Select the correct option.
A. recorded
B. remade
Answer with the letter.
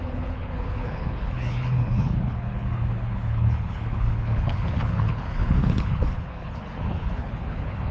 B